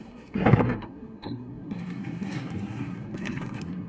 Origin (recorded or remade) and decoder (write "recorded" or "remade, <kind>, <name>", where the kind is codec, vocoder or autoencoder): remade, codec, SNAC